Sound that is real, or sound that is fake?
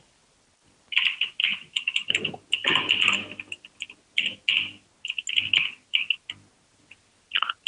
real